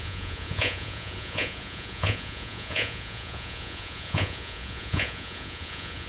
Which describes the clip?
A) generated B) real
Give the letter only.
A